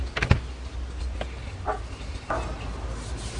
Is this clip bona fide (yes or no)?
yes